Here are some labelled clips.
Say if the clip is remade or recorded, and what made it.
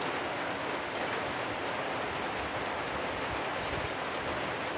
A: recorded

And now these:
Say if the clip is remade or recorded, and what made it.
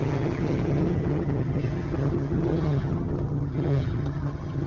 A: remade, vocoder, HiFi-GAN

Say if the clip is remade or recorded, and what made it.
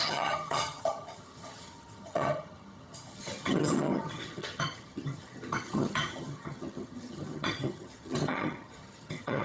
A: remade, vocoder, HiFi-GAN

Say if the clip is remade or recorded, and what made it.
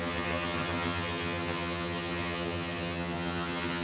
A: remade, vocoder, HiFi-GAN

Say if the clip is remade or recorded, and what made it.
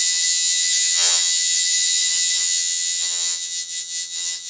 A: remade, vocoder, HiFi-GAN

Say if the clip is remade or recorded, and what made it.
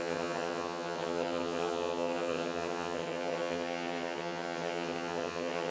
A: remade, vocoder, HiFi-GAN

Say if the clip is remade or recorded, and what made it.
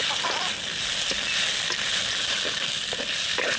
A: recorded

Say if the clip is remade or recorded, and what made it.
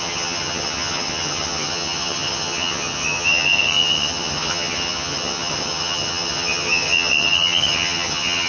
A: remade, vocoder, HiFi-GAN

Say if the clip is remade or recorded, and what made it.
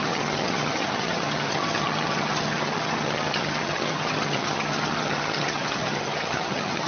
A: remade, vocoder, HiFi-GAN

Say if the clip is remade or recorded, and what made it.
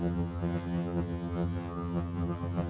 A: remade, vocoder, HiFi-GAN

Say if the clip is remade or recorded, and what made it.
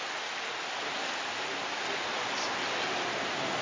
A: recorded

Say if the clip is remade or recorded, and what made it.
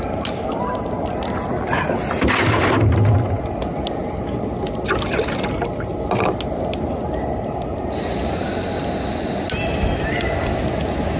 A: recorded